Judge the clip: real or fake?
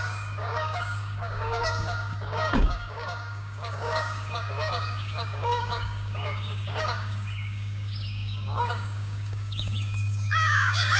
fake